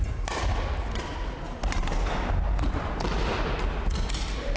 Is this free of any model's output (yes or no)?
yes